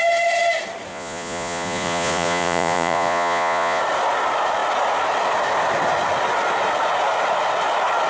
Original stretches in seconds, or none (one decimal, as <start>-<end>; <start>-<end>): 0.0-0.9; 3.8-8.1